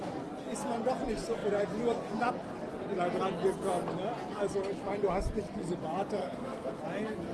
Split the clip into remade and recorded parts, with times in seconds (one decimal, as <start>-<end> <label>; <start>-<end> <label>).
0.0-6.2 recorded; 6.2-6.8 remade; 6.8-7.3 recorded